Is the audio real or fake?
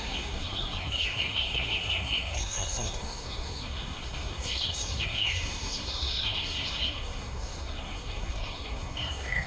fake